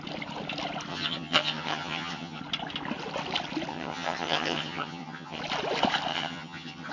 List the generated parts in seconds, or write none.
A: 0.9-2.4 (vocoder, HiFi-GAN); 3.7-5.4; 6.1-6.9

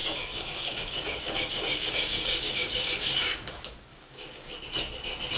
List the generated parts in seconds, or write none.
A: 0.0-2.9 (codec, DAC); 3.9-4.5

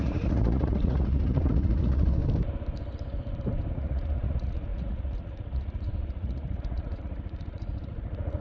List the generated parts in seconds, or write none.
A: 0.0-2.2 (vocoder, Vocos); 3.7-8.4

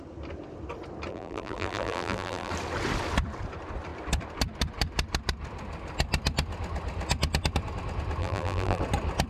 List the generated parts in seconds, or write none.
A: 1.1-2.5 (vocoder, BigVGAN v2); 8.2-8.8

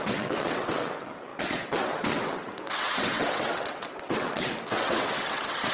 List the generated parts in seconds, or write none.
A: 0.0-5.7 (vocoder, WaveNeXt)

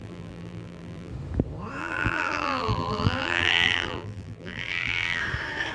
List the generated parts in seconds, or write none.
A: 0.0-1.1 (vocoder, BigVGAN v2); 1.8-5.2

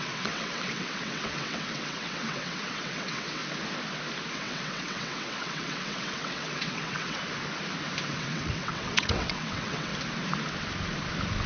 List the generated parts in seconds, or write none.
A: 0.0-3.4 (vocoder, WaveNeXt); 4.3-7.2; 8.1-9.9